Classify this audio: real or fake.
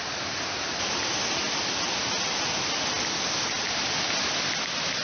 real